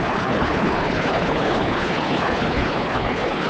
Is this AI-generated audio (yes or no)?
yes